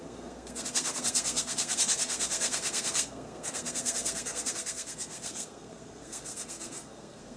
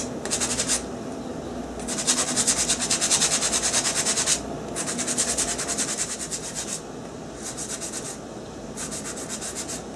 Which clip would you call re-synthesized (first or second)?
first